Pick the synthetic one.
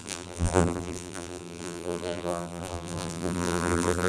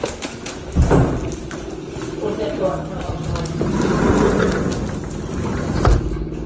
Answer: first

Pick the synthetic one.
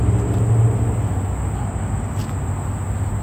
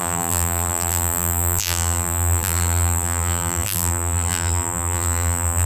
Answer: second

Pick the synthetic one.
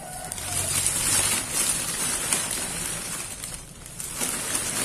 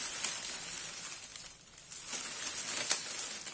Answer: first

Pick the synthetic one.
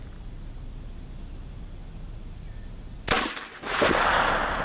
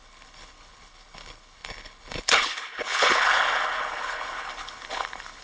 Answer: second